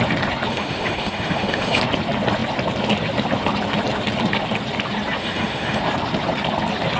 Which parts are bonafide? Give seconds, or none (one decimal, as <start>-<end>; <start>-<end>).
0.0-0.5; 1.8-5.2; 5.8-7.0